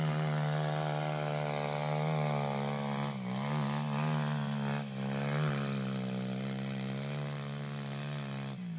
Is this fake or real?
real